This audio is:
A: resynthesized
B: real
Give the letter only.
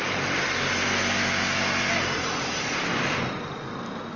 B